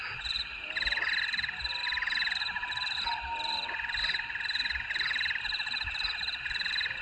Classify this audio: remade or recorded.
recorded